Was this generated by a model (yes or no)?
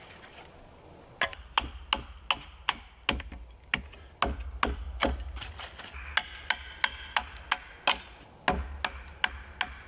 no